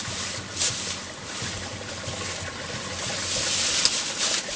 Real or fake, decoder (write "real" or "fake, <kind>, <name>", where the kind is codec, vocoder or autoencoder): real